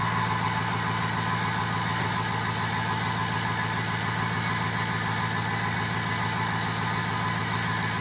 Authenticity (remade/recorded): recorded